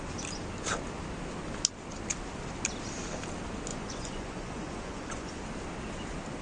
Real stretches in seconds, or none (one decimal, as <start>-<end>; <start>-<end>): 0.0-3.7; 5.4-6.4